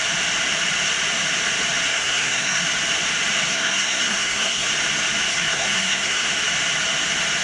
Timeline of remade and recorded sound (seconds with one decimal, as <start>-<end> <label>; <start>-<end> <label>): 0.0-1.9 recorded; 1.9-2.6 remade; 2.6-3.5 recorded; 3.5-4.7 remade; 4.7-5.3 recorded; 5.3-6.3 remade; 6.3-7.4 recorded